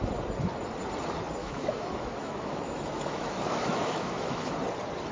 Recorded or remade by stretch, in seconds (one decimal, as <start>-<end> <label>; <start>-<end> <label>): 0.0-1.4 recorded; 1.4-4.5 remade; 4.5-5.1 recorded